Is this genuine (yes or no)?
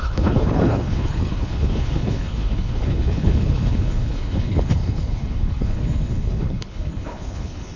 no